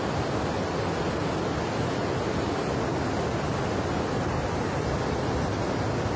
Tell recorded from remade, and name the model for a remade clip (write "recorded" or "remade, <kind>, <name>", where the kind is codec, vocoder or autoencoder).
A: recorded